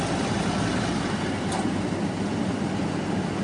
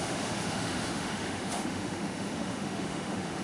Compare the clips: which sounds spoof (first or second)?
second